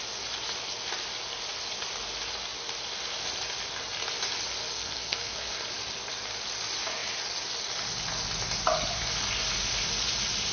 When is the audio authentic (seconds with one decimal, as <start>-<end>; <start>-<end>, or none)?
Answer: 0.0-4.6; 5.7-10.5